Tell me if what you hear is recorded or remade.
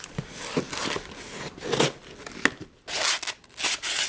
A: recorded